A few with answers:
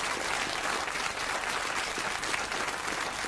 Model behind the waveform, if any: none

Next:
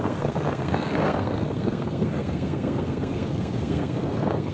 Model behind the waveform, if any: codec, SNAC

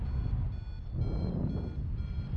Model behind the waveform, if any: none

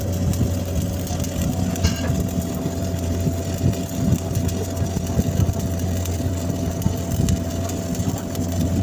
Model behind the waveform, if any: none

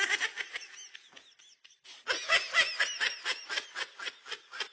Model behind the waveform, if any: none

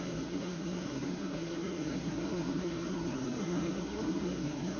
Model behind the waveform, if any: codec, SNAC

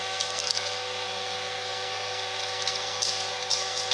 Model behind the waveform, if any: codec, SNAC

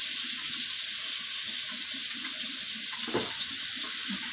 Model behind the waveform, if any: none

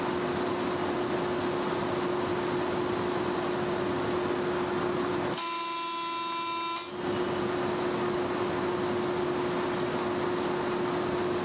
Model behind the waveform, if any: none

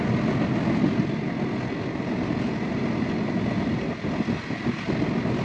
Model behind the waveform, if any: none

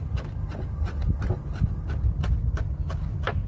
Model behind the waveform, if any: none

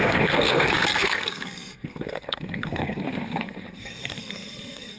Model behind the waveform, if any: codec, SNAC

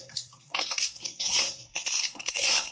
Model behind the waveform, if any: codec, SNAC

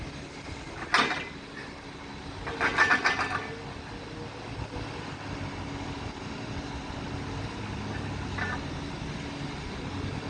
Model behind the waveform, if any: none